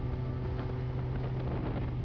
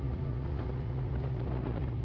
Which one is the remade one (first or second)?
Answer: second